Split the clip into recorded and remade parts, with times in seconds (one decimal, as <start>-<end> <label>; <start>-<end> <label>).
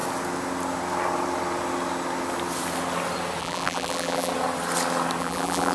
0.0-3.4 recorded; 3.4-4.3 remade; 4.3-5.2 recorded; 5.2-5.7 remade